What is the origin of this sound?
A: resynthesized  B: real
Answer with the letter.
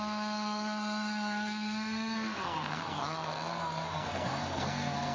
A